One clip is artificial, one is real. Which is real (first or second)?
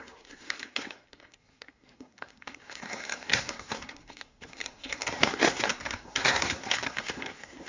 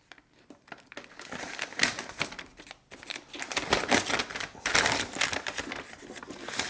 second